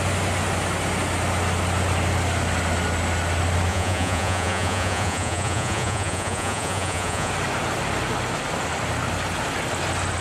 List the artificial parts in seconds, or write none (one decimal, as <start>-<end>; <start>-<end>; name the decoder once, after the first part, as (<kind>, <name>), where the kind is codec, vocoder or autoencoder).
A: 3.7-7.3 (vocoder, Vocos)